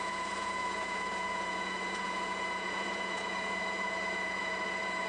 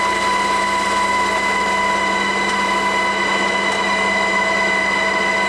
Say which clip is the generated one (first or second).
first